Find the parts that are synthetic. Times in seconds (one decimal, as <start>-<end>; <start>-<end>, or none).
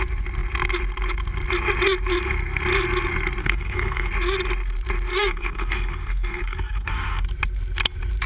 3.4-4.1; 5.1-7.3